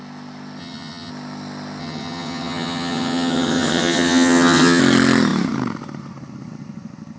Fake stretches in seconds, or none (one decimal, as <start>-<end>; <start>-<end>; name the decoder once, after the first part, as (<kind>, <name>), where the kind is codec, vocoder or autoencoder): 0.6-1.1 (vocoder, HiFi-GAN); 1.8-4.8